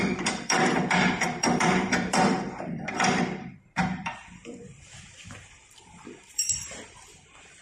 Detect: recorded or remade remade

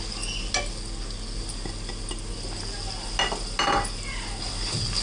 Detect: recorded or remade recorded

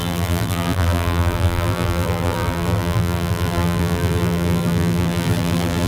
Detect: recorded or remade remade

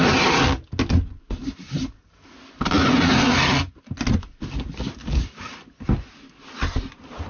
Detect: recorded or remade recorded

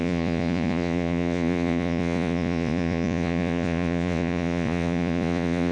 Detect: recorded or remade remade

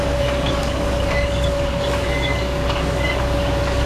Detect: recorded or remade remade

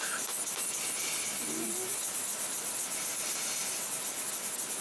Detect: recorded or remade recorded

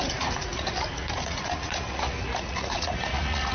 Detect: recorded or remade remade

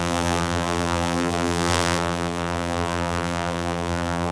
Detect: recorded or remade remade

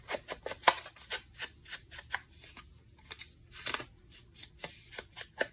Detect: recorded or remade recorded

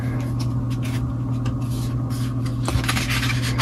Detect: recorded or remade recorded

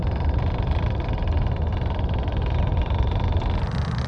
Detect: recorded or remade recorded